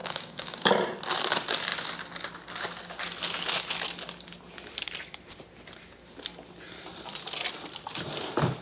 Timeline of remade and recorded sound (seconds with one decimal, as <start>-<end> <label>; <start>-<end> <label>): 0.0-0.7 remade; 0.7-8.6 recorded